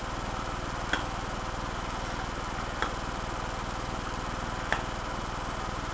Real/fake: real